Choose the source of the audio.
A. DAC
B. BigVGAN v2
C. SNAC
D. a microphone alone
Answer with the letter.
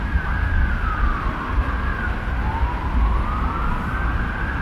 D